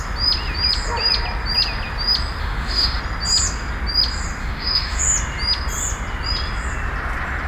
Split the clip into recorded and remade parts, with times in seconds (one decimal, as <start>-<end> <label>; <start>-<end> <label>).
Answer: 0.0-2.4 recorded; 2.4-3.0 remade; 3.0-4.4 recorded; 4.4-5.0 remade; 5.0-7.5 recorded